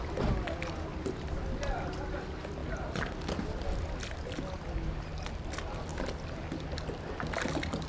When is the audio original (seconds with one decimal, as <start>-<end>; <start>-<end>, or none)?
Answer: 0.0-7.9